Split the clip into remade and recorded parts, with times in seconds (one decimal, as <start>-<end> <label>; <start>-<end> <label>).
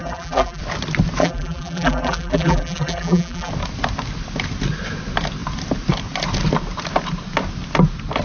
0.0-0.6 remade; 0.6-1.2 recorded; 1.2-3.5 remade; 3.5-8.2 recorded